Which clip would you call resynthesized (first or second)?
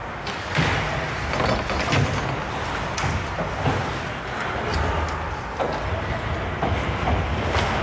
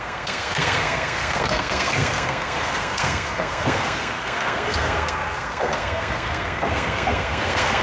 second